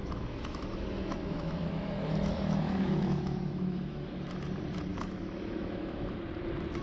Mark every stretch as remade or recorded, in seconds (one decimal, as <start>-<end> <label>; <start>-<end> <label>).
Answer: 0.0-4.1 remade; 4.1-4.9 recorded; 4.9-6.1 remade; 6.1-6.8 recorded